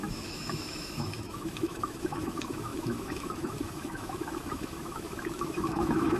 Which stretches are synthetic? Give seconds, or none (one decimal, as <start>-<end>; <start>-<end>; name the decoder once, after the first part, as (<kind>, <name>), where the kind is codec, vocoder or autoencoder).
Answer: 0.0-6.2 (autoencoder, DAC-VAE)